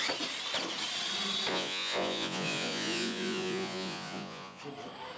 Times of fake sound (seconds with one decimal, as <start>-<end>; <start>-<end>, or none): 1.5-4.6